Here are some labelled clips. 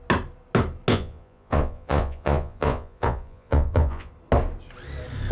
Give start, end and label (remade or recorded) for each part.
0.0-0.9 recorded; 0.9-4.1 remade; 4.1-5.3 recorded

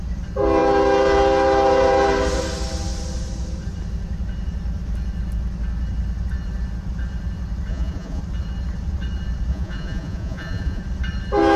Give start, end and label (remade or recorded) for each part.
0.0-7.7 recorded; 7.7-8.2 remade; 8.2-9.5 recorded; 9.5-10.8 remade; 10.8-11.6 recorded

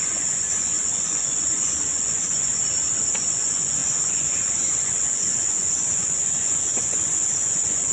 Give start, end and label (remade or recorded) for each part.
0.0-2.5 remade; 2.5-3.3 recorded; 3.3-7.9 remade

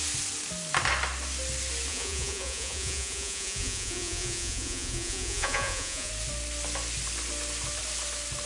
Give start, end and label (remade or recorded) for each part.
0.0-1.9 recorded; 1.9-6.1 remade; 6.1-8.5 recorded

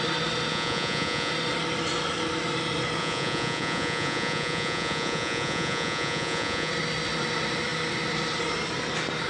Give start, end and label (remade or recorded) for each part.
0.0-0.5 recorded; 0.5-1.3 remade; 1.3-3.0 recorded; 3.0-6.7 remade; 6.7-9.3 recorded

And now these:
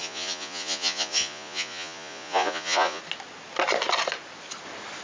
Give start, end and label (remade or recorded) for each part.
0.0-3.0 remade; 3.0-5.0 recorded